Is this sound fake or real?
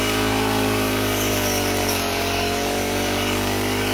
fake